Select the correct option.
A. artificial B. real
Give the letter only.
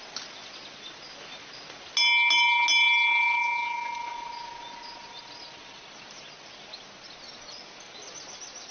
B